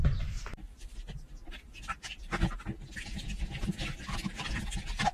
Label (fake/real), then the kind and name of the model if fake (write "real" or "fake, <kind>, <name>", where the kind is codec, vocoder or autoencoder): real